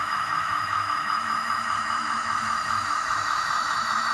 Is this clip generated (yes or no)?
yes